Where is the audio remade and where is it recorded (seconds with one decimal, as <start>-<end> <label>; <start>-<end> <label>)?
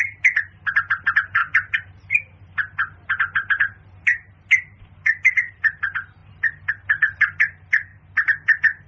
0.0-8.9 recorded